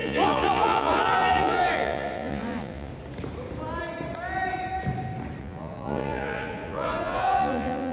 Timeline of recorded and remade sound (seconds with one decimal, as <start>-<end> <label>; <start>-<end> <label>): 0.0-2.9 remade; 2.9-5.4 recorded; 5.4-7.9 remade